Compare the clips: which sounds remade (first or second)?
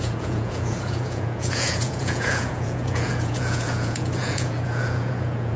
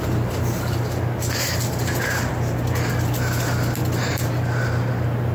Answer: first